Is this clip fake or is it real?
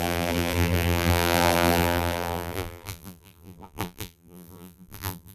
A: fake